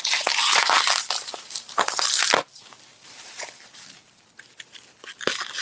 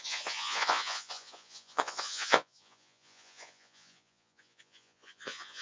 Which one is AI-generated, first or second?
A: second